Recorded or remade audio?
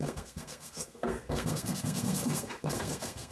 remade